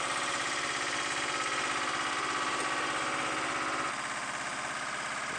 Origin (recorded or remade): recorded